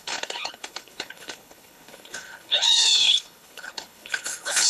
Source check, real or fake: fake